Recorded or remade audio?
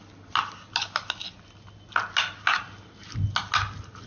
recorded